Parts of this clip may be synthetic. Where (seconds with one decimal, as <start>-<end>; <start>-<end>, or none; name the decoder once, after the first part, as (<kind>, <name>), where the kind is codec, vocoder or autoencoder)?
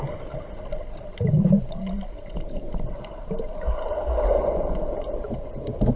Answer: none